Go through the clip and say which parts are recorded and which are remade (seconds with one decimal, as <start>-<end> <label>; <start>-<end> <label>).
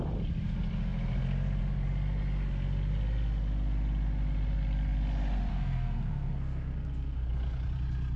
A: 0.0-5.5 recorded; 5.5-7.3 remade; 7.3-8.2 recorded